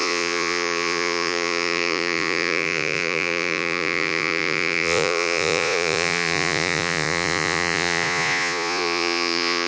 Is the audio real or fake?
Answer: fake